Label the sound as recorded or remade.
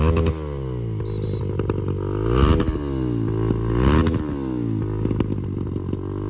recorded